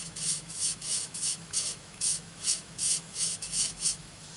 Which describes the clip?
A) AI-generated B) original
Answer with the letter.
A